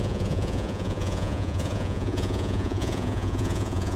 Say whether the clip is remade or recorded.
remade